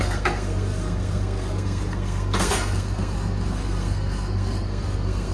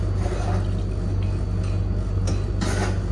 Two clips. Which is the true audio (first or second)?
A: second